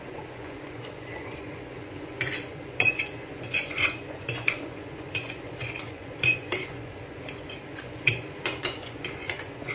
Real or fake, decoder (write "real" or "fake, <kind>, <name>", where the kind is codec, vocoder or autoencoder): fake, vocoder, Vocos